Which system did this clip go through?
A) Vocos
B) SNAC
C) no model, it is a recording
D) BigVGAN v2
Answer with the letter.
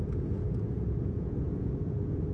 A